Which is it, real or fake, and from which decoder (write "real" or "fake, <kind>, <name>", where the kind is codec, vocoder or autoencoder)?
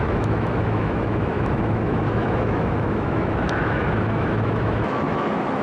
fake, autoencoder, DAC-VAE